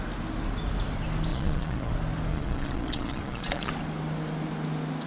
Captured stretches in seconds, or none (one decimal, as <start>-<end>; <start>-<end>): 0.0-1.3; 1.9-2.3; 3.7-5.1